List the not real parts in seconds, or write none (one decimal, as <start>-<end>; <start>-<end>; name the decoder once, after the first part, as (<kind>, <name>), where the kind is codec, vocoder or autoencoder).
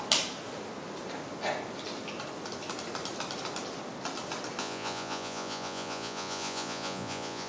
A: 4.6-7.5 (vocoder, Vocos)